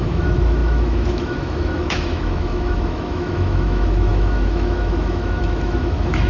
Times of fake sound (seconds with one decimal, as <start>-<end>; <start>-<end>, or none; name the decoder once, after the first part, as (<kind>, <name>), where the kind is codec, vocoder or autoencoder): 0.0-6.3 (autoencoder, DAC-VAE)